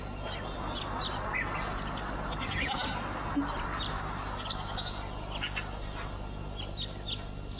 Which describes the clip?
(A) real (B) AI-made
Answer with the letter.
A